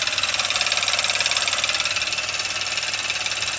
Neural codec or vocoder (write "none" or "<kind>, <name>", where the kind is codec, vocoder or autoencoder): none